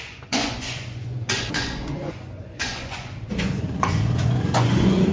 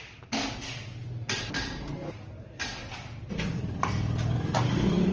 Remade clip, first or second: first